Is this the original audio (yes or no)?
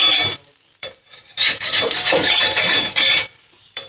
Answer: no